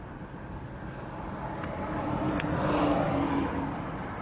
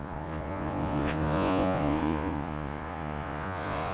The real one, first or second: first